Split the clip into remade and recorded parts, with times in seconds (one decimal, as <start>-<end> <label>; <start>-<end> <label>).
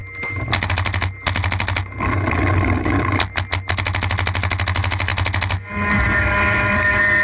0.0-7.2 recorded